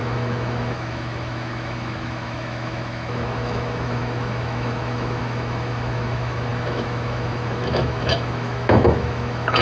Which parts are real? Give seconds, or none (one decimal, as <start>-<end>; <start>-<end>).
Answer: none